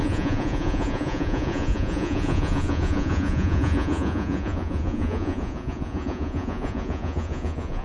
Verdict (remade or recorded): remade